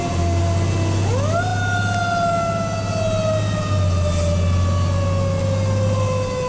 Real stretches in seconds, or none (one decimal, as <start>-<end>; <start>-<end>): 0.0-6.5